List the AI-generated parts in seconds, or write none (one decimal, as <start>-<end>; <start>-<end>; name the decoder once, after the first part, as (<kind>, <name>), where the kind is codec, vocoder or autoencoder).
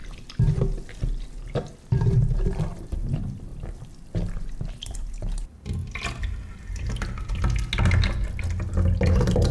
1.8-3.5 (vocoder, BigVGAN v2); 4.7-5.8; 9.1-9.5